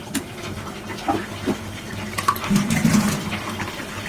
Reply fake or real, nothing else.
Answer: real